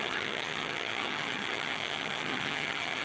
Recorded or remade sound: remade